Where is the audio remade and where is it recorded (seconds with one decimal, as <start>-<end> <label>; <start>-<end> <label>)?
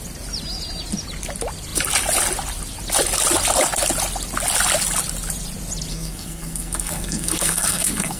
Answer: 0.0-5.9 recorded; 5.9-8.2 remade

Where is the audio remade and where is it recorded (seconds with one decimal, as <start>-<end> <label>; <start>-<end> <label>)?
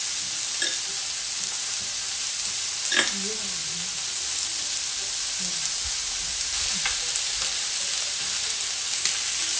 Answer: 0.0-6.0 recorded; 6.0-7.1 remade; 7.1-9.6 recorded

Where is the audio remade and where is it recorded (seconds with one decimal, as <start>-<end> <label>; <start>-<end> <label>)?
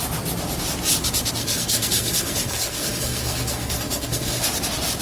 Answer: 0.0-1.4 recorded; 1.4-4.4 remade; 4.4-5.0 recorded